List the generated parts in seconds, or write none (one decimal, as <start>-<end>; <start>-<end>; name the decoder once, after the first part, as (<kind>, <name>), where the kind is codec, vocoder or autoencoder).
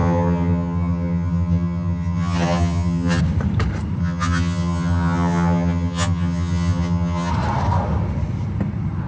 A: 0.0-3.2 (vocoder, HiFi-GAN); 4.0-7.3